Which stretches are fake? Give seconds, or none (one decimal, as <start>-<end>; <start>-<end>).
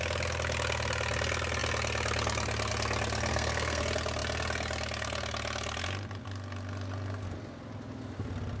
3.3-3.8